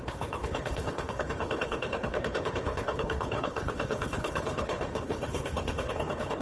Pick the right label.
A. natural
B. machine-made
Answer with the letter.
B